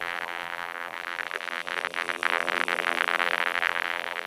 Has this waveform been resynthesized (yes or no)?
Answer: yes